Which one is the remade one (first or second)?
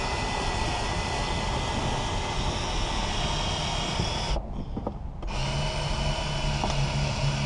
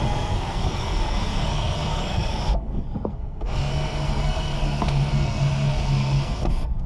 second